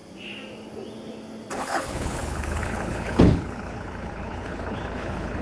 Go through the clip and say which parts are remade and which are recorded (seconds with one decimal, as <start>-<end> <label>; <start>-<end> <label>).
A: 0.0-1.6 recorded; 1.6-5.4 remade